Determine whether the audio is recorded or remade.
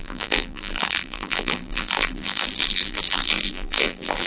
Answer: remade